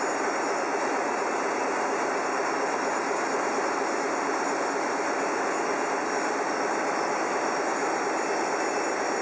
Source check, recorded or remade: recorded